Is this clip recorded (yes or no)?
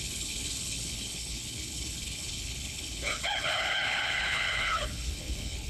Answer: no